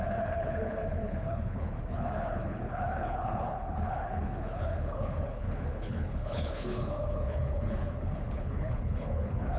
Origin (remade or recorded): remade